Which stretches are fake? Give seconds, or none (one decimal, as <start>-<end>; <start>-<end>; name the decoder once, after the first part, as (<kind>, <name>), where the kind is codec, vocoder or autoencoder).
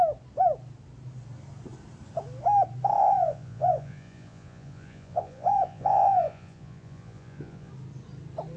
3.0-7.7 (vocoder, Vocos)